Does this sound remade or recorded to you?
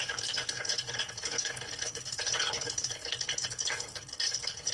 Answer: remade